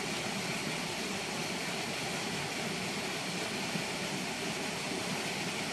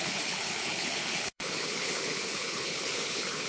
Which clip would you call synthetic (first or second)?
second